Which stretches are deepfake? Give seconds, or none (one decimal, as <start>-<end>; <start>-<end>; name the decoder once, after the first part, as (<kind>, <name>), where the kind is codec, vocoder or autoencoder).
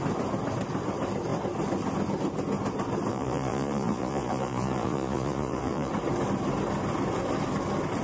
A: 3.1-5.9 (vocoder, Vocos)